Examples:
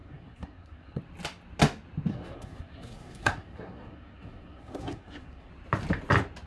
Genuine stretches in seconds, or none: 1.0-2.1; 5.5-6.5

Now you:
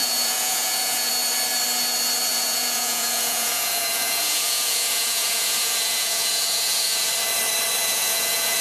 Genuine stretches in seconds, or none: 1.1-2.3; 7.1-7.8

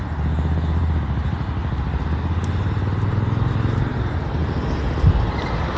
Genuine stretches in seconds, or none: 0.0-5.8